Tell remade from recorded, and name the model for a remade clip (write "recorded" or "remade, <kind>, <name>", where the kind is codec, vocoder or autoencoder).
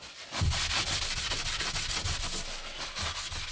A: recorded